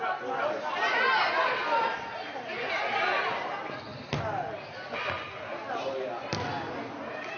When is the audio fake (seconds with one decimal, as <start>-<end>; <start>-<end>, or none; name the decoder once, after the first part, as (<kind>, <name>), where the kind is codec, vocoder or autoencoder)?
none